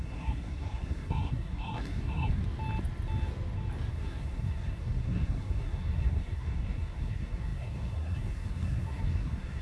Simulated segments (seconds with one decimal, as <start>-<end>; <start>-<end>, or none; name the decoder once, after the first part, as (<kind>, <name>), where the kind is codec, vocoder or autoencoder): 0.0-2.4 (codec, SNAC); 3.9-9.6